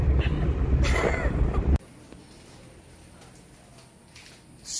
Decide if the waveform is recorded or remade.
recorded